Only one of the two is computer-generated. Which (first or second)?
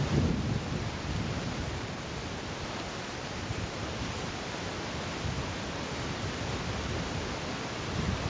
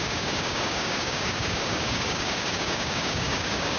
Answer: second